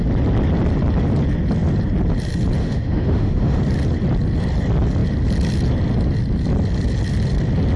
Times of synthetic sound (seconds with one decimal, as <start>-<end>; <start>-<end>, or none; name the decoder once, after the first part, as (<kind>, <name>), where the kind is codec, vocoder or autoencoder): 2.6-3.6 (autoencoder, DAC-VAE)